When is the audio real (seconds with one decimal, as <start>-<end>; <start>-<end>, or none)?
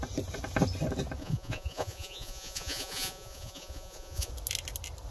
0.0-1.2; 4.3-5.1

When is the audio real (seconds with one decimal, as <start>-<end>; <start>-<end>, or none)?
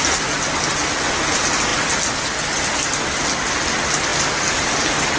0.0-5.2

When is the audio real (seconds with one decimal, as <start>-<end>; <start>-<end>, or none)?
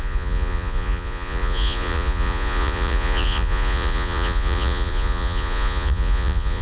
none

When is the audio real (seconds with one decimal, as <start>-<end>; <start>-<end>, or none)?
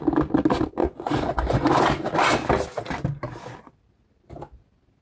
0.0-0.8; 1.7-5.0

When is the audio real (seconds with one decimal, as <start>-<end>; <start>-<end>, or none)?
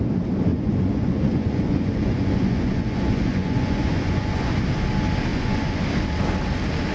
0.0-0.5; 4.6-5.3; 5.8-6.9